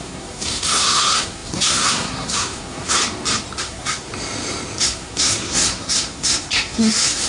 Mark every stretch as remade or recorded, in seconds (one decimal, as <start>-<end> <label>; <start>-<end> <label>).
0.0-3.0 remade; 3.0-3.6 recorded; 3.6-4.1 remade; 4.1-4.8 recorded; 4.8-7.3 remade